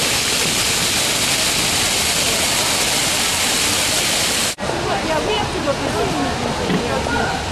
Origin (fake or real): real